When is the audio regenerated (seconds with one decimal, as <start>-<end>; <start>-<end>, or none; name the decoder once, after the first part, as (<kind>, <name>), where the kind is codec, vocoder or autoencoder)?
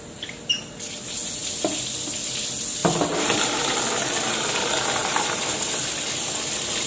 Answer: 2.8-3.8 (vocoder, BigVGAN v2); 5.0-5.8